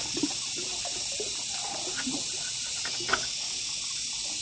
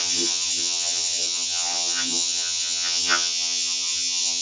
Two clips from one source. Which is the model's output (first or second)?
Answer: second